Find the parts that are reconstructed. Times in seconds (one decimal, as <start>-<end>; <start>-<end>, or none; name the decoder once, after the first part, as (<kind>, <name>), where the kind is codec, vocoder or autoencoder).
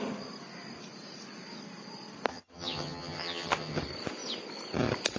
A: 2.3-3.8 (vocoder, HiFi-GAN)